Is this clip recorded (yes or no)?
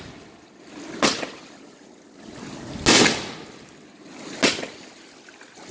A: yes